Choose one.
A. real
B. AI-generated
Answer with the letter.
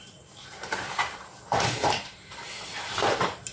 B